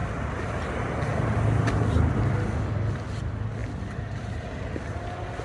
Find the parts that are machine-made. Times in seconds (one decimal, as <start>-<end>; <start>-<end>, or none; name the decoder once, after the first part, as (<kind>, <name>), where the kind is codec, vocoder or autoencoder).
none